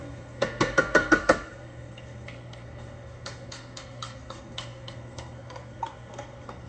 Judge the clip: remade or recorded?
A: remade